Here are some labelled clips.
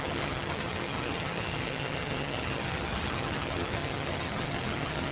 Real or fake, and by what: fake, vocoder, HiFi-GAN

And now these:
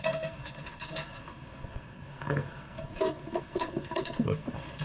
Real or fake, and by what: fake, codec, SNAC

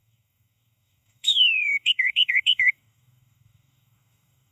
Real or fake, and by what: fake, codec, DAC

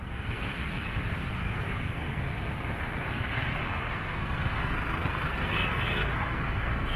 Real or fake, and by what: fake, codec, SNAC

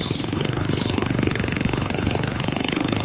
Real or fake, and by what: fake, codec, HILCodec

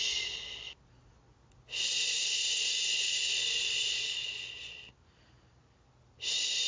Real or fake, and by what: real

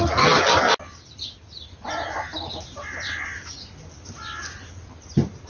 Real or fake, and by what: real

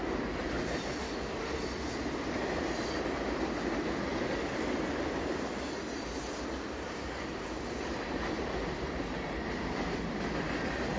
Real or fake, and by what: real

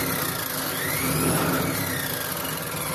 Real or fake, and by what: real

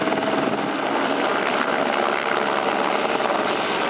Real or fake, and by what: real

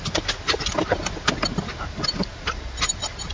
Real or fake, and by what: real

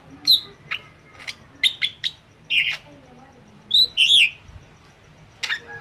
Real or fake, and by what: real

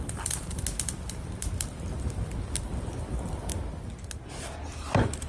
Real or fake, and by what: real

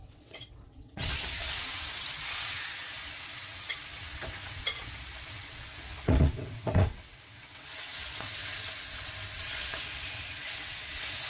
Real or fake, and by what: fake, vocoder, WaveNeXt